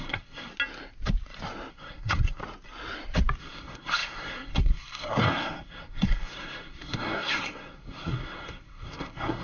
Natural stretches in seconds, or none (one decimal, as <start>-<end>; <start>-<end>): 0.5-1.7; 2.4-3.4